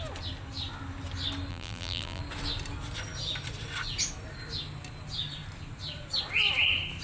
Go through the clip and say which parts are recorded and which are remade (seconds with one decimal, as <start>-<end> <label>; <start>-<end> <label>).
0.0-1.5 recorded; 1.5-2.2 remade; 2.2-7.0 recorded

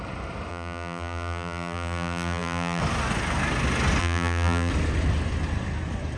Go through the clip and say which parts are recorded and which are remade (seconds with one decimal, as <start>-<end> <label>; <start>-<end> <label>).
0.0-0.5 recorded; 0.5-2.8 remade; 2.8-4.0 recorded; 4.0-4.7 remade; 4.7-6.2 recorded

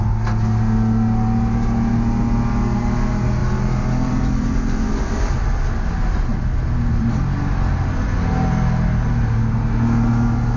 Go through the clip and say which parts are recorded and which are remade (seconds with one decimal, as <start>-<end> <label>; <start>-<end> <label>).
0.0-3.4 recorded; 3.4-5.1 remade; 5.1-10.6 recorded

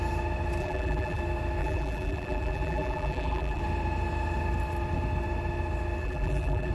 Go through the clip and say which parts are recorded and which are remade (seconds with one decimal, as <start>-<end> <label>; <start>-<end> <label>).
0.0-0.6 recorded; 0.6-1.2 remade; 1.2-1.6 recorded; 1.6-3.6 remade; 3.6-6.0 recorded; 6.0-6.7 remade

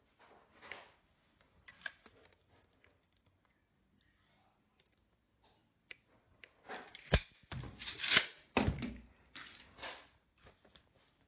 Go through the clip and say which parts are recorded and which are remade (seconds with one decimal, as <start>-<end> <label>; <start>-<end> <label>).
0.0-11.3 recorded

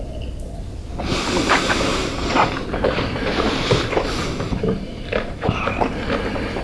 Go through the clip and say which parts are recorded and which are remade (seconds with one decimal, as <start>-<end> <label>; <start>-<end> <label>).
0.0-1.9 recorded; 1.9-5.9 remade; 5.9-6.6 recorded

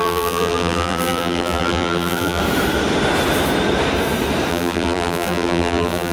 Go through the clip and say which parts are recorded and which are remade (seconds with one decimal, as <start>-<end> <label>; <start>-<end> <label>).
0.0-2.4 remade; 2.4-4.5 recorded; 4.5-6.1 remade

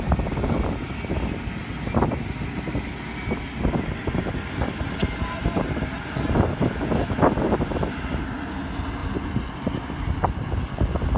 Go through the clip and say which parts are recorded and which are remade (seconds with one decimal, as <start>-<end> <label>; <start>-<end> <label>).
0.0-11.2 recorded